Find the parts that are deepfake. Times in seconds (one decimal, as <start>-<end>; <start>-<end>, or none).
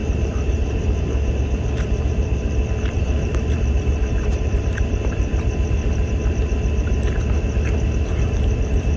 0.0-2.3; 2.9-5.3; 8.1-9.0